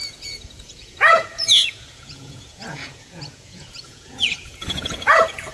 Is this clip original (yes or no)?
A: no